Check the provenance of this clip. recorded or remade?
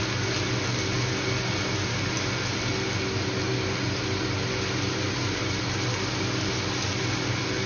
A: recorded